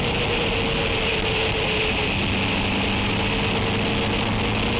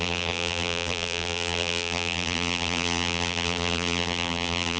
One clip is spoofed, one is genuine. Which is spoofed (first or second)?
second